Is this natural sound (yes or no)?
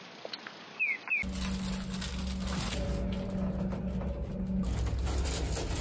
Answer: yes